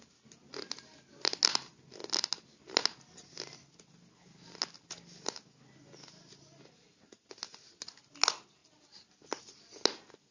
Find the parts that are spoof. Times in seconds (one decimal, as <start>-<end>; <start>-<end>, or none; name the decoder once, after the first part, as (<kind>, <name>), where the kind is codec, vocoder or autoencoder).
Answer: 8.6-9.4 (vocoder, BigVGAN v2)